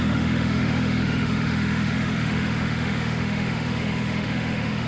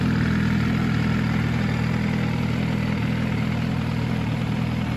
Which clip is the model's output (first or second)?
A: first